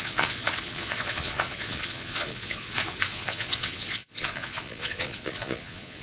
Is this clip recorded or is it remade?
remade